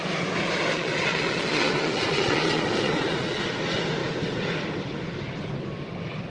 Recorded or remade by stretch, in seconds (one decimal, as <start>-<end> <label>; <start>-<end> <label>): 0.0-0.7 recorded; 0.7-3.4 remade; 3.4-6.3 recorded